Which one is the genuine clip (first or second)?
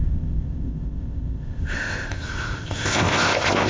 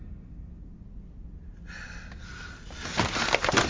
second